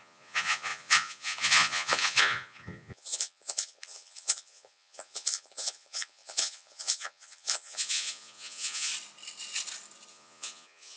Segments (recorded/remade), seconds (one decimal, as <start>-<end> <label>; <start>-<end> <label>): 0.0-8.9 remade; 8.9-10.1 recorded; 10.1-11.0 remade